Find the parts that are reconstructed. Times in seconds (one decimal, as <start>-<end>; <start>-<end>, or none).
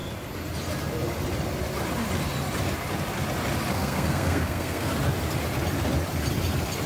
3.7-4.9